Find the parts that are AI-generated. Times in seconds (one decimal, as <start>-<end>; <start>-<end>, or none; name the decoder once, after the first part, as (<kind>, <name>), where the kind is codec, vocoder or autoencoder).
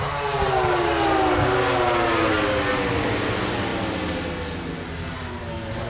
none